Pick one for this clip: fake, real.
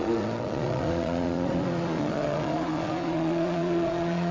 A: fake